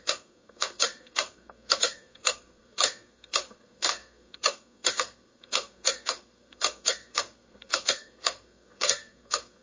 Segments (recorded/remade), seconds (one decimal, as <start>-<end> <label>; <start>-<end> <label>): 0.0-9.6 remade